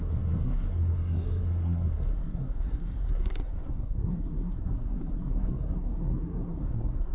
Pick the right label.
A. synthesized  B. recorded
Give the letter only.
A